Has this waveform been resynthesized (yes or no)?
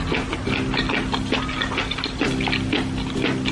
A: no